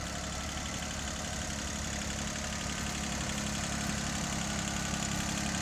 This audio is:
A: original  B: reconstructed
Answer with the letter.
A